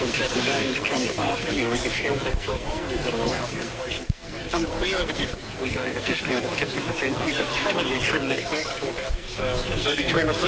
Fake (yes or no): yes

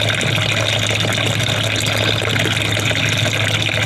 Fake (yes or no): no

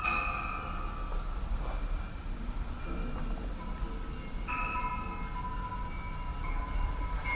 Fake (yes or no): no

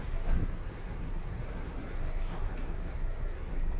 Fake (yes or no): yes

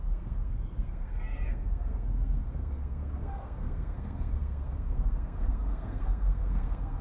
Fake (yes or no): yes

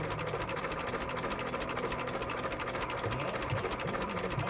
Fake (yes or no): no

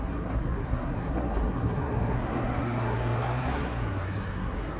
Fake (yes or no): yes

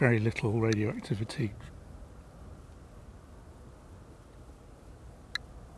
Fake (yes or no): no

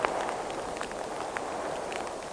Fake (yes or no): no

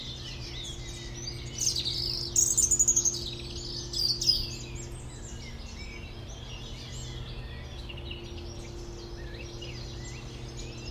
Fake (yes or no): no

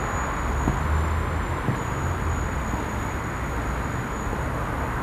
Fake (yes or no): no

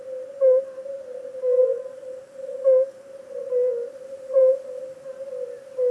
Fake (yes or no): no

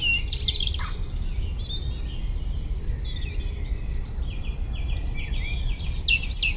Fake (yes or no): no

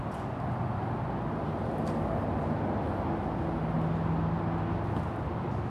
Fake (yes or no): no